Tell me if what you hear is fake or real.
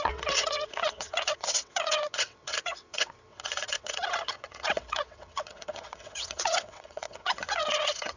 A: fake